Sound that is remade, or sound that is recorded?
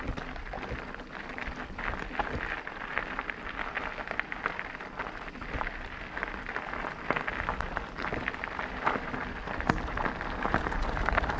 recorded